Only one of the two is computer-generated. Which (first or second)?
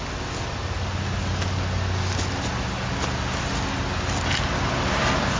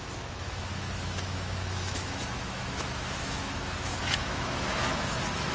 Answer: second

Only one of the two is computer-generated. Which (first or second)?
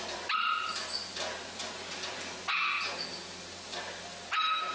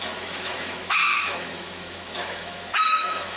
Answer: second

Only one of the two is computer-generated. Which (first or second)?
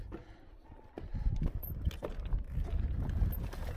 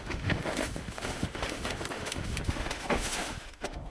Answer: second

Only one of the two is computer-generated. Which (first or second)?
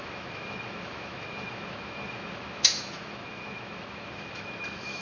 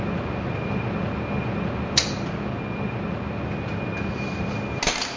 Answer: first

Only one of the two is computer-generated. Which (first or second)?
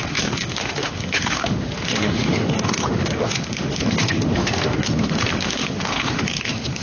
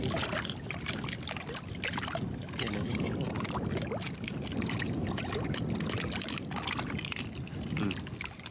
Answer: first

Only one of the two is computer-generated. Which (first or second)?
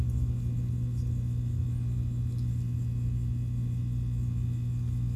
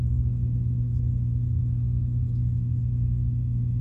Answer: second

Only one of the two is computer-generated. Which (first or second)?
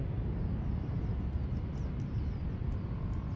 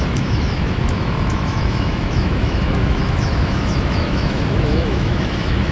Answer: second